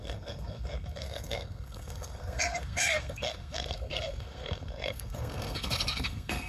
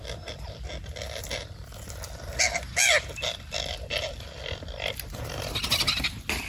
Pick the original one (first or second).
second